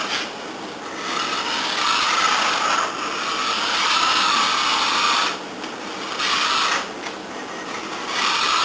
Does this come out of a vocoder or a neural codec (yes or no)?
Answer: no